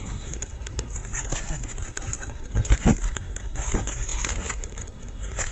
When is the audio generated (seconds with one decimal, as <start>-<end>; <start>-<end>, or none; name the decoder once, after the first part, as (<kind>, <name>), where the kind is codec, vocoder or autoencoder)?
0.0-5.5 (codec, SNAC)